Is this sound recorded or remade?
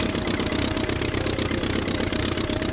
remade